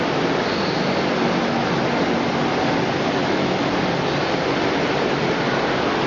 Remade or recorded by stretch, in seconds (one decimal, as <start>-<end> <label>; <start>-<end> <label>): 0.0-3.2 recorded; 3.2-3.7 remade; 3.7-6.1 recorded